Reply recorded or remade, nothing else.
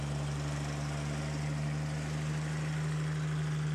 recorded